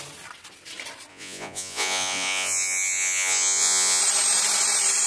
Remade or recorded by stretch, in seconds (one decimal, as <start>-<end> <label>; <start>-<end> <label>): 0.0-1.1 recorded; 1.1-4.0 remade; 4.0-5.1 recorded